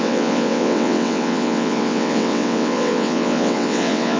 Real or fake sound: fake